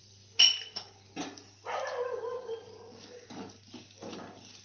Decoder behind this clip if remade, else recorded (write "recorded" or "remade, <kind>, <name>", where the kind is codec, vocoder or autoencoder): recorded